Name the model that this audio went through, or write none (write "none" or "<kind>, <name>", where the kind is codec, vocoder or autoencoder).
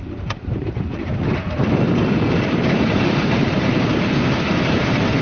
vocoder, BigVGAN v2